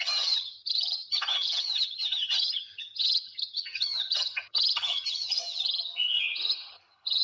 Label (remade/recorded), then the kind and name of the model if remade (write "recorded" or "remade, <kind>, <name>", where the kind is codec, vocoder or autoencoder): remade, vocoder, HiFi-GAN